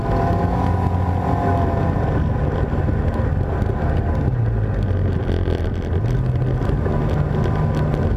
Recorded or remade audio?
recorded